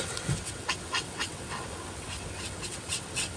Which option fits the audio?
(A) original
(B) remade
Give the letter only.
B